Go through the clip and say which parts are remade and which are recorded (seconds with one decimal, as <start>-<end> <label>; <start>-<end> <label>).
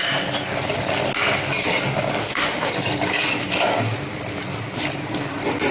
0.0-2.2 recorded; 2.2-2.7 remade; 2.7-5.7 recorded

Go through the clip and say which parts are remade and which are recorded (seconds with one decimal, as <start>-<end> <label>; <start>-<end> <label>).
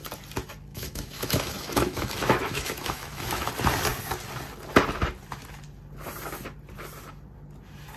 0.0-0.7 recorded; 0.7-3.5 remade; 3.5-8.0 recorded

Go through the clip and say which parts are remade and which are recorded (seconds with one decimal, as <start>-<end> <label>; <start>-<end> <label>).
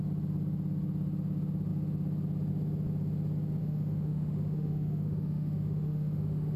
0.0-3.6 recorded; 3.6-6.6 remade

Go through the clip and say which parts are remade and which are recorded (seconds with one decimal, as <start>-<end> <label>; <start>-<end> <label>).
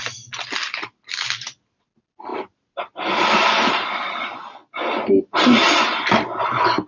0.0-6.9 recorded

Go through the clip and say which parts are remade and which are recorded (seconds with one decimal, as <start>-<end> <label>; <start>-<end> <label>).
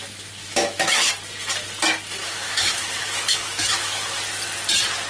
0.0-0.4 recorded; 0.4-1.1 remade; 1.1-2.2 recorded; 2.2-4.0 remade; 4.0-5.1 recorded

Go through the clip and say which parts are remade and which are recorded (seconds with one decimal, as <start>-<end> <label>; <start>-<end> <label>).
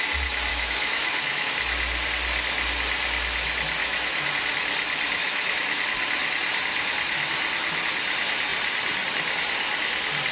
0.0-0.5 recorded; 0.5-1.5 remade; 1.5-3.8 recorded; 3.8-4.3 remade; 4.3-5.2 recorded; 5.2-5.8 remade; 5.8-10.3 recorded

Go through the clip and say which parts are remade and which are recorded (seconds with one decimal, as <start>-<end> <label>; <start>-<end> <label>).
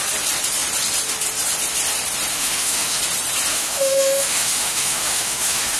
0.0-2.3 recorded; 2.3-3.0 remade; 3.0-3.5 recorded; 3.5-5.8 remade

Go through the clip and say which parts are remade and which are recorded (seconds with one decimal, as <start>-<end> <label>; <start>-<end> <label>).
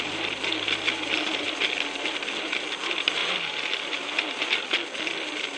0.0-5.6 recorded